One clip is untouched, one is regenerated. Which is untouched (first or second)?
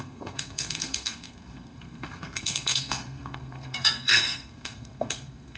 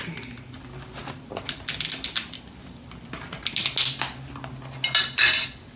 second